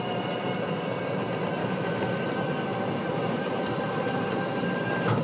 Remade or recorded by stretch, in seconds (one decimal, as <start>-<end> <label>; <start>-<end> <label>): 0.0-1.6 recorded; 1.6-2.2 remade; 2.2-5.2 recorded